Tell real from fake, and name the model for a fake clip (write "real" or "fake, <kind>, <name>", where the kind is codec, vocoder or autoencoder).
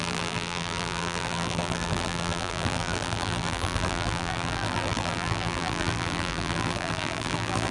fake, vocoder, BigVGAN v2